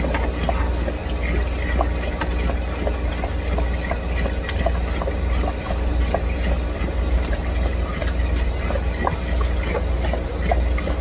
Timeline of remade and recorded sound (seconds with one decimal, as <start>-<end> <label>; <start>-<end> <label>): 0.0-11.0 recorded